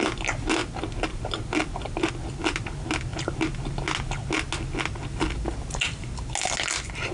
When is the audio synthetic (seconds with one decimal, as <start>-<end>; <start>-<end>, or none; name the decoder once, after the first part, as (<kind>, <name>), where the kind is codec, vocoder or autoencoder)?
none